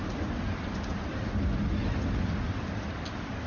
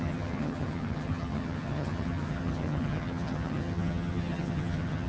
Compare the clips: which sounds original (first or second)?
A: first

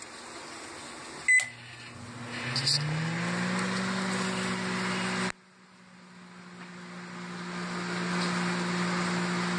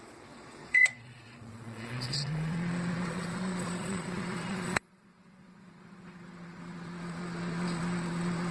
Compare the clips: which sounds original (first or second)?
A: first